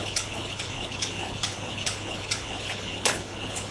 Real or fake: fake